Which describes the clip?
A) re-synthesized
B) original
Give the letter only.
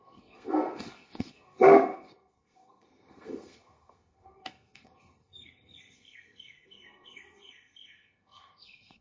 A